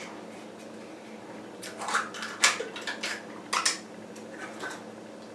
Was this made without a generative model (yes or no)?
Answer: yes